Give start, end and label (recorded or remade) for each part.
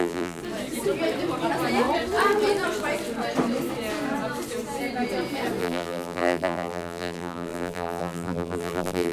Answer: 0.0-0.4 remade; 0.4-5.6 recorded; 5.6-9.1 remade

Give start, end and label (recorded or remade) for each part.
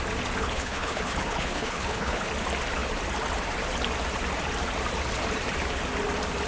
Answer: 0.0-0.4 recorded; 0.4-2.3 remade; 2.3-6.5 recorded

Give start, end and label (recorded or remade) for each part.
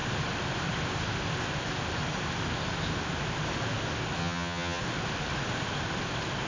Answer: 0.0-4.2 recorded; 4.2-4.8 remade; 4.8-6.5 recorded